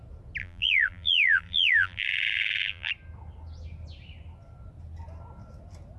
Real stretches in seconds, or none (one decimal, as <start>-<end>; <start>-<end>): 0.0-0.4; 2.9-6.0